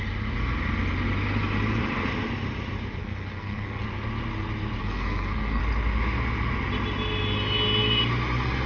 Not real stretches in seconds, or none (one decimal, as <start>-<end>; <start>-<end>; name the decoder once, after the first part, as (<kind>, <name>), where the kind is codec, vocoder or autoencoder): 3.0-3.8 (codec, SNAC); 4.8-5.6

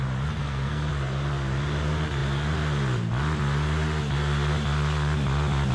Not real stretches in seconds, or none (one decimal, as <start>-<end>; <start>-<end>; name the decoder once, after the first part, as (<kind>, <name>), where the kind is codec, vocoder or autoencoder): 0.4-0.9 (codec, SNAC)

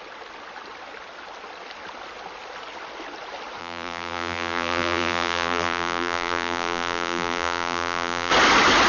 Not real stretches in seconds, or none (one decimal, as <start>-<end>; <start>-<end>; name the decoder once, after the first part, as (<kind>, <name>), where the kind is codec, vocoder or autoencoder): 3.6-8.3 (vocoder, BigVGAN v2)

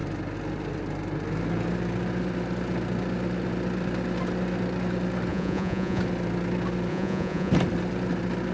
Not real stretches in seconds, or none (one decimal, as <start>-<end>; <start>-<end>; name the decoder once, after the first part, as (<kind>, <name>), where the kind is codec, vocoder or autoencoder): 5.3-6.0 (vocoder, Vocos); 6.9-7.5

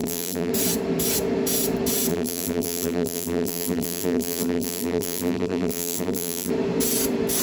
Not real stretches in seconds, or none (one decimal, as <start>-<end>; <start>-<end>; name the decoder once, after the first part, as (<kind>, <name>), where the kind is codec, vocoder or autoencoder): 0.0-0.5 (vocoder, BigVGAN v2); 2.1-6.5

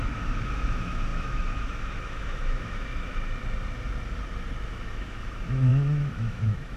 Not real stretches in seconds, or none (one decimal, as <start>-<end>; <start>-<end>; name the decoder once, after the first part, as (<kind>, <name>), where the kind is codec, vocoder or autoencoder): 0.0-3.1 (autoencoder, DAC-VAE); 4.7-6.8

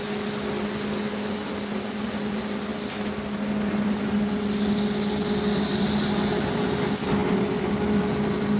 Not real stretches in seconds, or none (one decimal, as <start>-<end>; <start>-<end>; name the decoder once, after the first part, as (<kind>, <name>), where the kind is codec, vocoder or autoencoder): none